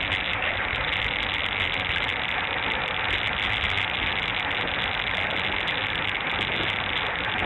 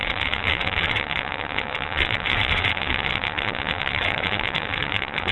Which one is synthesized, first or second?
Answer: second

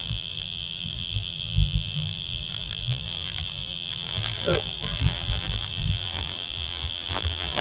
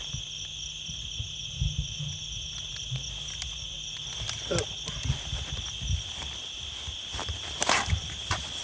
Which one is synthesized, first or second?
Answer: first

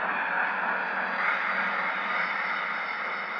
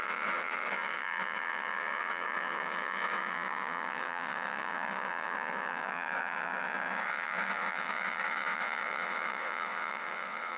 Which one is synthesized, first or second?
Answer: second